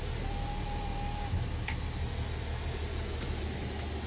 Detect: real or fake real